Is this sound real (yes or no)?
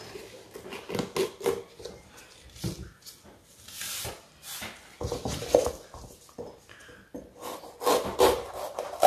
yes